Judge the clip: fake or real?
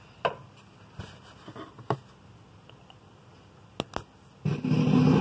real